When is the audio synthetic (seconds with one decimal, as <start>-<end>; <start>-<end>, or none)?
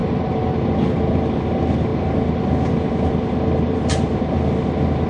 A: none